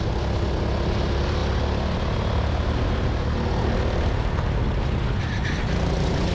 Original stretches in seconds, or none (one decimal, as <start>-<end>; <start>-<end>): 0.0-6.3